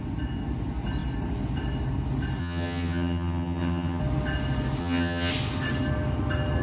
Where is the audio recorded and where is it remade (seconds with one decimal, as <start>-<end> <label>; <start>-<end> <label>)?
0.0-2.4 recorded; 2.4-4.0 remade; 4.0-4.8 recorded; 4.8-5.3 remade; 5.3-6.6 recorded